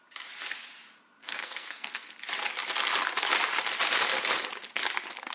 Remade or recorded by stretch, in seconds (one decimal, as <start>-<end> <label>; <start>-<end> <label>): 0.0-1.2 recorded; 1.2-2.1 remade; 2.1-5.3 recorded